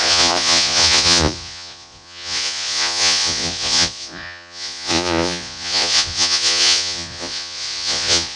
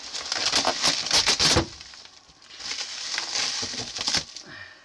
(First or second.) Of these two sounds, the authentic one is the second